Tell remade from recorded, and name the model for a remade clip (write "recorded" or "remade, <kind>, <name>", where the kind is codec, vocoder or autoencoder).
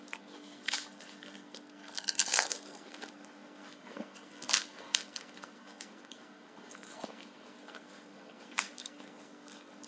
remade, codec, SNAC